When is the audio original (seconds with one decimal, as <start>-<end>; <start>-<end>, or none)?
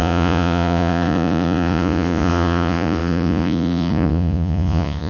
none